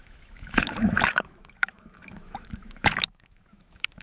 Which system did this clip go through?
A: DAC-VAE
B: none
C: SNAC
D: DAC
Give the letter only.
A